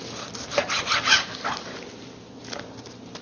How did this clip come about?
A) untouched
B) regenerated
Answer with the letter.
A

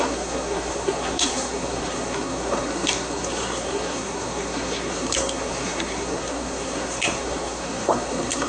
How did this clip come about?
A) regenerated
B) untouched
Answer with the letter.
A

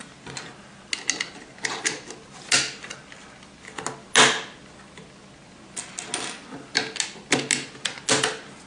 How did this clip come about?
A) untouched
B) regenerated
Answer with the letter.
A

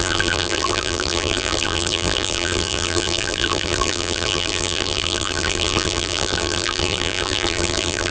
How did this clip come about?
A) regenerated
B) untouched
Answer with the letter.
A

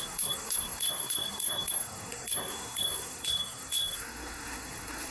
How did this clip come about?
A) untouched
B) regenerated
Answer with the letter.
B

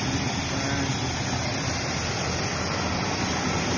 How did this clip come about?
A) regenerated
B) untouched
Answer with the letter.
B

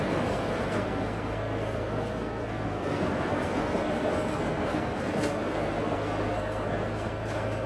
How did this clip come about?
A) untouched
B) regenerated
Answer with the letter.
B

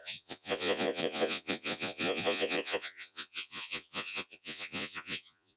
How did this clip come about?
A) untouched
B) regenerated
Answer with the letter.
B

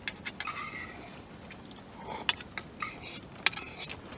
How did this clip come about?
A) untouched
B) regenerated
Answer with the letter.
A